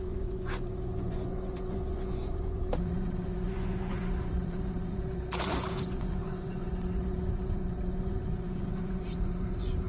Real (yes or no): no